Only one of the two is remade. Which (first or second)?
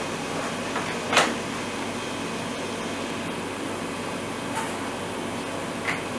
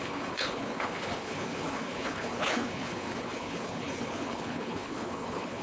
second